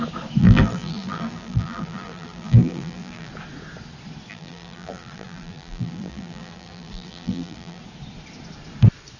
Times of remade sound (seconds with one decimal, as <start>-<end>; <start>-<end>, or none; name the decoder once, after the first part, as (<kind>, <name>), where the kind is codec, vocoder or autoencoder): 0.4-3.3 (vocoder, BigVGAN v2); 4.3-7.8